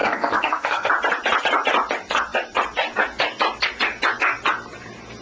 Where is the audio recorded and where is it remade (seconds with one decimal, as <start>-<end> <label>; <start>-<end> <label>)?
0.0-0.9 remade; 0.9-5.2 recorded